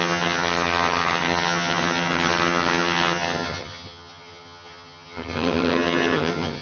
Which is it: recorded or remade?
remade